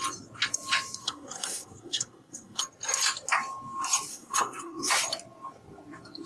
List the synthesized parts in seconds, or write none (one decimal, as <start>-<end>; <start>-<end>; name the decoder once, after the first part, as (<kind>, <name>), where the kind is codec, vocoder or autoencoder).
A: 1.0-2.6 (codec, SNAC); 4.1-4.9